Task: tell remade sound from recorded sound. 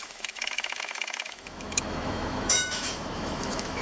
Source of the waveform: remade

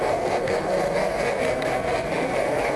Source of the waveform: remade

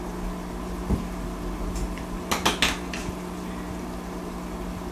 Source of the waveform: recorded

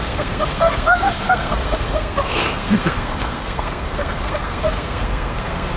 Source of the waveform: remade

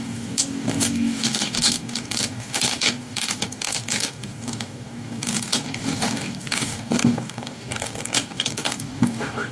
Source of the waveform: remade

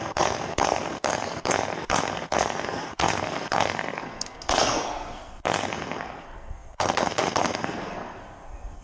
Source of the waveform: remade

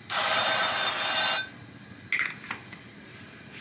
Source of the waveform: recorded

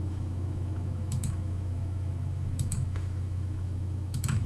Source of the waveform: remade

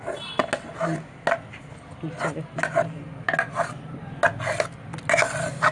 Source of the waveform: recorded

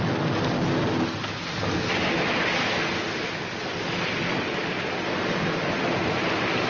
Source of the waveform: recorded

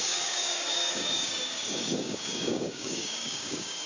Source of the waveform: remade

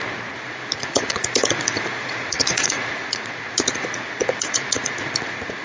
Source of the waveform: remade